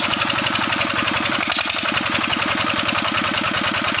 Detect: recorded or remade recorded